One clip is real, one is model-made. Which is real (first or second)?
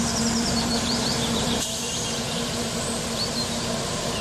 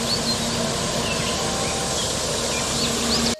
second